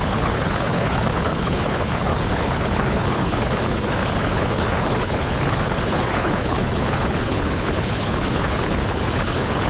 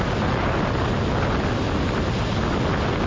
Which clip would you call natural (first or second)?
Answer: second